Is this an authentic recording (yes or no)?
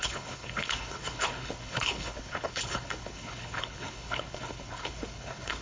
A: no